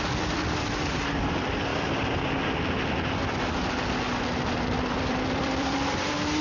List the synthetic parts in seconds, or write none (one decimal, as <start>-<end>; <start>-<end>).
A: 0.0-1.7; 4.9-6.4